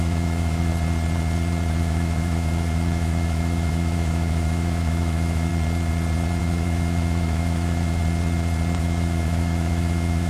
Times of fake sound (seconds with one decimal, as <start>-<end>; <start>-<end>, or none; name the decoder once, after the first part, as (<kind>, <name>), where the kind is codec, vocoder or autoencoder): 0.0-0.7 (autoencoder, DAC-VAE); 1.8-5.5; 6.4-8.0; 8.8-10.3